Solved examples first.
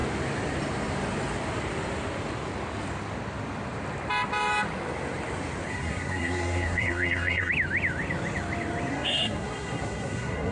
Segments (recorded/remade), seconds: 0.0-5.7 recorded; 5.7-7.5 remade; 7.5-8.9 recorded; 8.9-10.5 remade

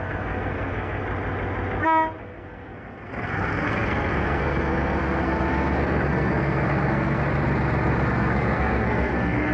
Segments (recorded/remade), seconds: 0.0-1.0 remade; 1.0-2.2 recorded; 2.2-7.2 remade; 7.2-8.1 recorded; 8.1-9.5 remade

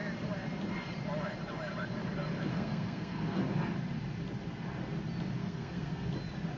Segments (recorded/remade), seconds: 0.0-2.5 recorded; 2.5-3.4 remade; 3.4-5.4 recorded; 5.4-6.1 remade; 6.1-6.6 recorded